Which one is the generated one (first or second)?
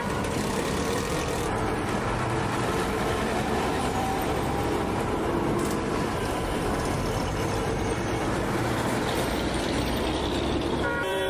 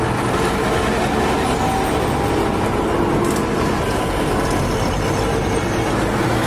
first